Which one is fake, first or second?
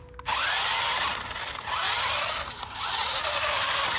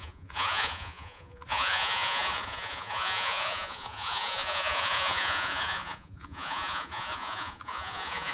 second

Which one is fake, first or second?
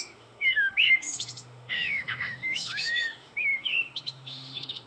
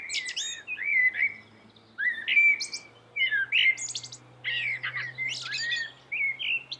first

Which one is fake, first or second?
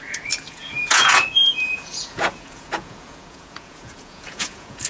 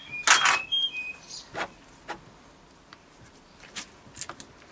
first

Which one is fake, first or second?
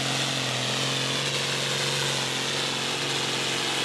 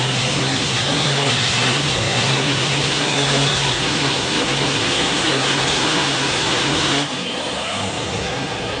second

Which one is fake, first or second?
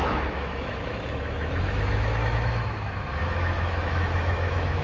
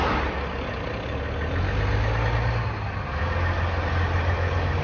first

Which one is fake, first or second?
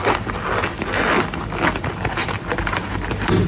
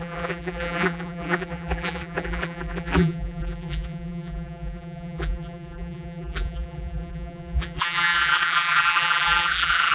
second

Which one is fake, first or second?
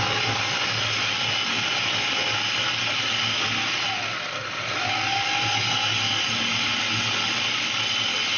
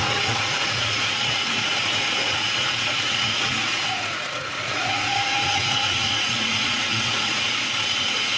second